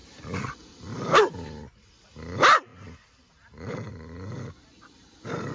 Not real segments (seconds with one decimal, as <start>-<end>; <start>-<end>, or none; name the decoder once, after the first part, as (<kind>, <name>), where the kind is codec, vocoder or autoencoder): none